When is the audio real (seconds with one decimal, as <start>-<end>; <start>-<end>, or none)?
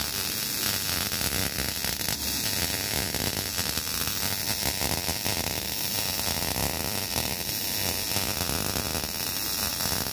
0.0-10.1